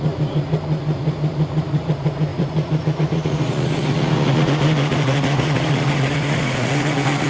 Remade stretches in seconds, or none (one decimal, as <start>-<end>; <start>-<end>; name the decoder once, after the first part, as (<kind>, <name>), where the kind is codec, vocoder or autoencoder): 0.0-7.3 (vocoder, Vocos)

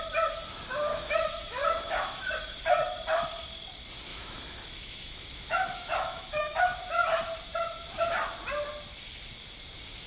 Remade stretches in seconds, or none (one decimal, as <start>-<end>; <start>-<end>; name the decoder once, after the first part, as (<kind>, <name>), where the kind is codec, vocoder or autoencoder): 0.9-2.7 (autoencoder, DAC-VAE); 4.1-6.6